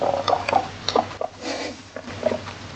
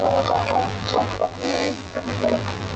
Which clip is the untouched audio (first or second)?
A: first